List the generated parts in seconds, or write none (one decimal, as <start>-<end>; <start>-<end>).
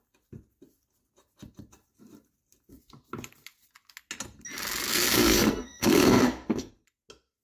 4.9-6.7